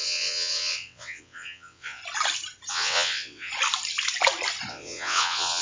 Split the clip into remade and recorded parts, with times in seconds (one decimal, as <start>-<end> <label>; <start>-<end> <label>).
0.0-2.0 remade; 2.0-2.7 recorded; 2.7-3.5 remade; 3.5-4.7 recorded; 4.7-5.6 remade